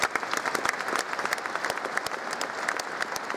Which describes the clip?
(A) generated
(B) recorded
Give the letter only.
B